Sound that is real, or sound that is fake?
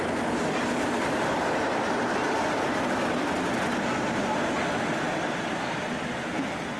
real